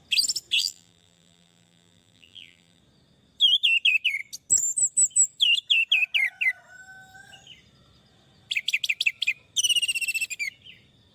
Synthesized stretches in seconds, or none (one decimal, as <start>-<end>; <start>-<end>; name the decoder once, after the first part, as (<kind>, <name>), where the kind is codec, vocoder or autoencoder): 0.6-2.8 (vocoder, BigVGAN v2)